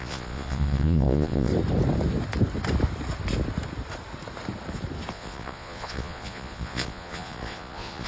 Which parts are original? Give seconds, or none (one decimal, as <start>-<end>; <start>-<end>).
1.5-5.1